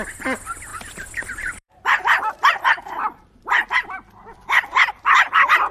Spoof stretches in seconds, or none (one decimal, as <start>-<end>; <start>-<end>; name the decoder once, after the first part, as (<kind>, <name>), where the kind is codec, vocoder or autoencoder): 0.7-4.1 (vocoder, BigVGAN v2)